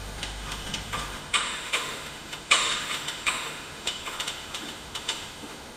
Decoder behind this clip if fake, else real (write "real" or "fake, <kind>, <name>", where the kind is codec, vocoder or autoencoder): fake, autoencoder, DAC-VAE